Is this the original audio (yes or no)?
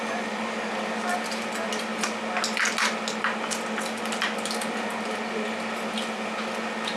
yes